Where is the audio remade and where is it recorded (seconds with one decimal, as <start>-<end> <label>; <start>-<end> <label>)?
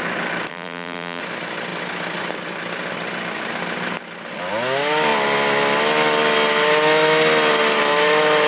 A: 0.0-0.5 recorded; 0.5-1.2 remade; 1.2-8.5 recorded